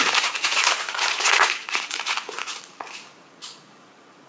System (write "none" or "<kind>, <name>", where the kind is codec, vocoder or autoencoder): vocoder, Vocos